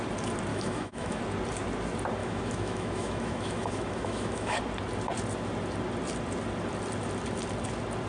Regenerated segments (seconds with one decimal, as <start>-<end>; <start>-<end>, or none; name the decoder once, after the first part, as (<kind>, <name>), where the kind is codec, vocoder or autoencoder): 0.5-1.2 (autoencoder, DAC-VAE); 2.2-4.6